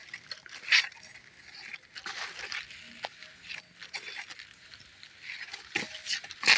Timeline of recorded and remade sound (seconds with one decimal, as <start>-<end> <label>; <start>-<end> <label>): 0.0-6.6 recorded